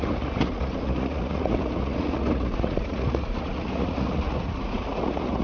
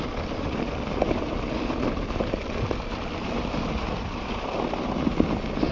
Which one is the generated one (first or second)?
first